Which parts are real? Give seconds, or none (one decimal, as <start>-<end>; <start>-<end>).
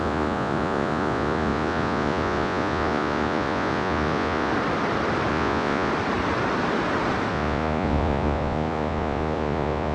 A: 4.5-5.3; 5.9-7.3